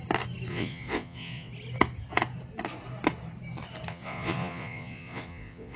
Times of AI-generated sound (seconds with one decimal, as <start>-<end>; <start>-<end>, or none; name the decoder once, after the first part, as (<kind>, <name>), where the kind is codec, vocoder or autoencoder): 0.5-1.5 (vocoder, Vocos); 3.9-5.8